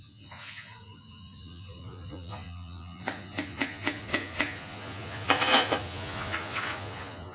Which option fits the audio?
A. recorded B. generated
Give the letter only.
B